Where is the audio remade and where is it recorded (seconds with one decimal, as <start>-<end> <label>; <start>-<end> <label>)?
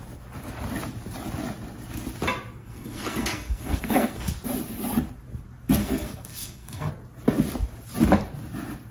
0.0-2.6 recorded; 2.6-4.3 remade; 4.3-5.8 recorded; 5.8-6.9 remade; 6.9-8.9 recorded